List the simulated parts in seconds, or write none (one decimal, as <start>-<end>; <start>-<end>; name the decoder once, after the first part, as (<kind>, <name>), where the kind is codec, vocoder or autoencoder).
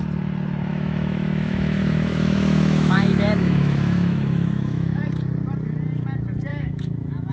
0.7-5.0 (autoencoder, DAC-VAE); 6.5-7.3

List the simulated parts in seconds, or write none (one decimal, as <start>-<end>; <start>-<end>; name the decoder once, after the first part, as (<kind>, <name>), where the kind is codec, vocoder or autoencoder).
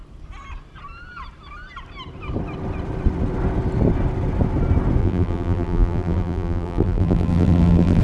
5.0-8.0 (vocoder, BigVGAN v2)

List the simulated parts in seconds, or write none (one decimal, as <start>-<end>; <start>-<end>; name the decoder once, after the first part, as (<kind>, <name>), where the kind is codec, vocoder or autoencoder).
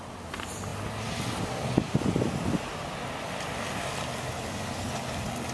none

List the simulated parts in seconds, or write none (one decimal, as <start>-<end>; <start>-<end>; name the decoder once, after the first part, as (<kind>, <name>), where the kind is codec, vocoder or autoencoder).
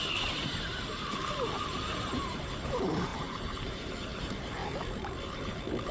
0.0-5.9 (vocoder, BigVGAN v2)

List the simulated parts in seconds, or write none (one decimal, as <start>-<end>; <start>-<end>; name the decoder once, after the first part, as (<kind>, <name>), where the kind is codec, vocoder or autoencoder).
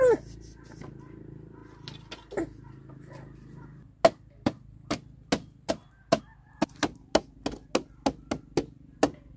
none